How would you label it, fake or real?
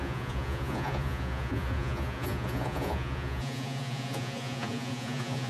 fake